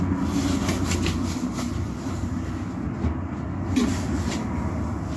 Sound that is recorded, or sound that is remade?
recorded